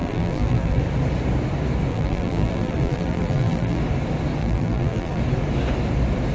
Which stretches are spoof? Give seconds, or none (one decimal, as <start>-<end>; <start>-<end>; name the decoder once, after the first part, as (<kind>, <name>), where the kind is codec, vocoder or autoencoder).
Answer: 0.0-0.8 (vocoder, BigVGAN v2); 1.9-3.8; 4.4-5.2